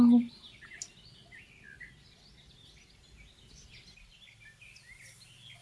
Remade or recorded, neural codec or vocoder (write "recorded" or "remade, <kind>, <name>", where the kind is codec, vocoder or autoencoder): recorded